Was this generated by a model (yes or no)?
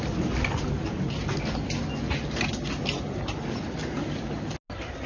no